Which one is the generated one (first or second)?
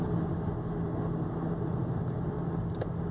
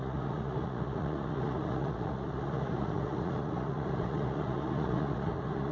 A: second